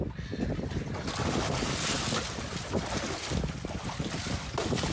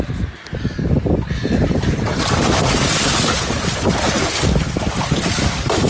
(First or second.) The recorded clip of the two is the first